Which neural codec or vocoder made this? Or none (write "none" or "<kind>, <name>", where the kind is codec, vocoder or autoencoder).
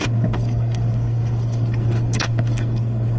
codec, SNAC